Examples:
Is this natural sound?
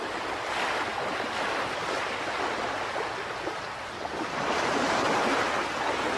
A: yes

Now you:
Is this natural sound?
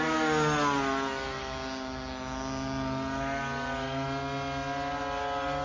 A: yes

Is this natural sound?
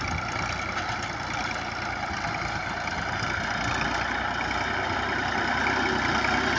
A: yes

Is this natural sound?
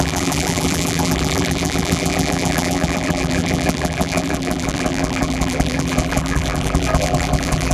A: no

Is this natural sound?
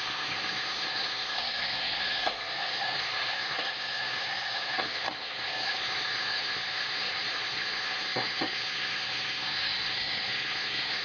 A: no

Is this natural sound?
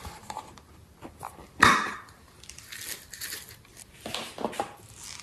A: yes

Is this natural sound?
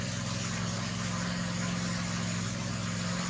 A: yes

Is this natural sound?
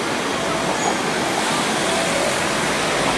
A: yes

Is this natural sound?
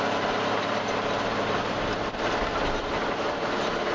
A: yes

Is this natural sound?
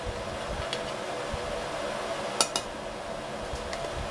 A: yes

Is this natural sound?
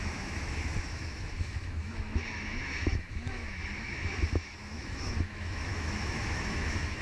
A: no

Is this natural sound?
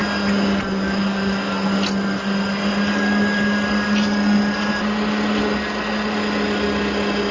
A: yes